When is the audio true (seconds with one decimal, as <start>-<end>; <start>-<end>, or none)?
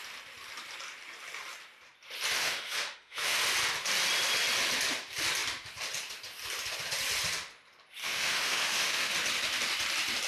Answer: 0.0-2.4; 3.4-8.0; 9.1-10.3